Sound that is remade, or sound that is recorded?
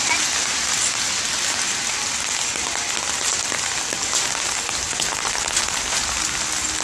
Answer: recorded